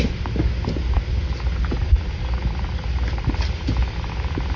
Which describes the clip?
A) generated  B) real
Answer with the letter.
B